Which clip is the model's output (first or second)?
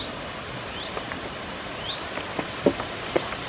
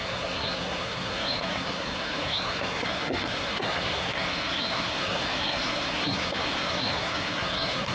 second